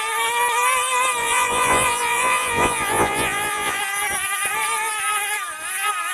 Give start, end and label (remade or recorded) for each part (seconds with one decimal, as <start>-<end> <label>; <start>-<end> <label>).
0.0-1.2 recorded; 1.2-3.8 remade; 3.8-6.1 recorded